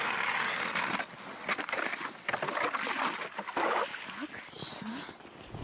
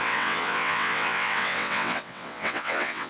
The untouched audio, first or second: first